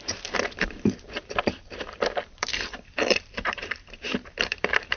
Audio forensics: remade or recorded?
remade